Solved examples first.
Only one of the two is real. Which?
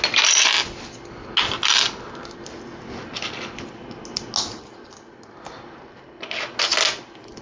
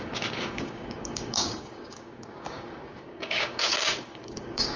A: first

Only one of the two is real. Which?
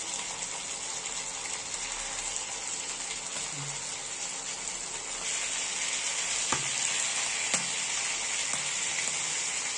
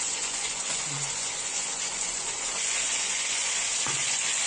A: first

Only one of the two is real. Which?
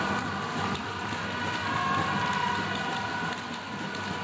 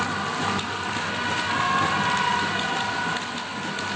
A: second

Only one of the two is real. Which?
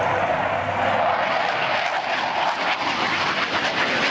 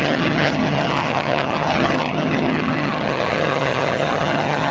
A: first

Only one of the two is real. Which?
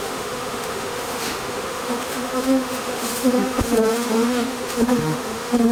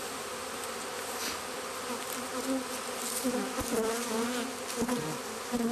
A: second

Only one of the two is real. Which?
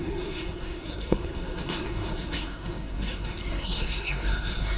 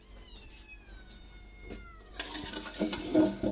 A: second